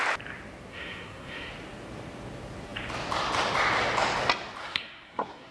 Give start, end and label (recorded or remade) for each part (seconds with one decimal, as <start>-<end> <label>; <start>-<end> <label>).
0.0-0.7 recorded; 0.7-1.5 remade; 1.5-4.6 recorded; 4.6-5.5 remade

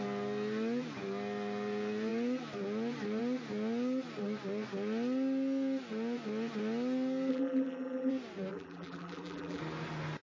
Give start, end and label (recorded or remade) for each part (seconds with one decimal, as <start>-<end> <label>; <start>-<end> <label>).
0.0-7.3 recorded; 7.3-8.1 remade; 8.1-8.5 recorded; 8.5-9.6 remade; 9.6-10.2 recorded

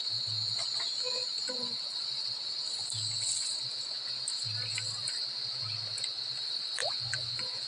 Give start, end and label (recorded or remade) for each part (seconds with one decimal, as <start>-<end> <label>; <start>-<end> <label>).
0.0-6.8 recorded; 6.8-7.7 remade